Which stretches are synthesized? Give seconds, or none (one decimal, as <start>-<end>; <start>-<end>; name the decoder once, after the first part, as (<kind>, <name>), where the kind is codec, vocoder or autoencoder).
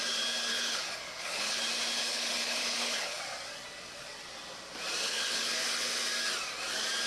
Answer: 0.5-1.6 (codec, HILCodec); 2.0-3.2; 5.0-5.6